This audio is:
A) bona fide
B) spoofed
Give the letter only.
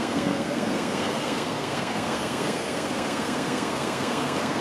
B